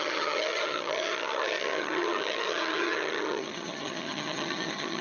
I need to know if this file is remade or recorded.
remade